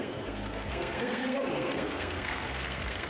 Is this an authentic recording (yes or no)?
no